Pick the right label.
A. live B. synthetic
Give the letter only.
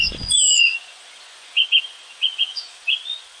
B